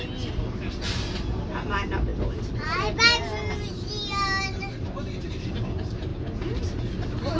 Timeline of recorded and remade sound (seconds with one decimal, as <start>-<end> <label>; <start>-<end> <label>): 0.0-7.4 recorded